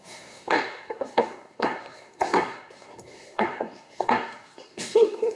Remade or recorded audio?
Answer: remade